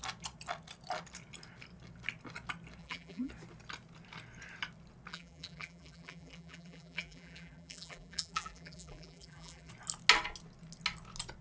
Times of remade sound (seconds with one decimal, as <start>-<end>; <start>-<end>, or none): 2.8-3.3; 5.1-9.7

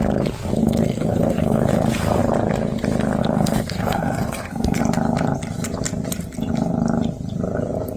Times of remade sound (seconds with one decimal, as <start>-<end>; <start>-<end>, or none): 0.6-2.2; 3.2-4.8

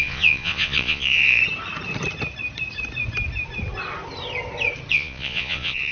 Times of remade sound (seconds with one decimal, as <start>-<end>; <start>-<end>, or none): 0.0-1.4; 4.9-5.9

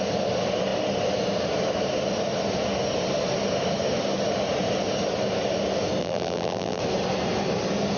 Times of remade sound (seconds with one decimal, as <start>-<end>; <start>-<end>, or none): 6.0-6.8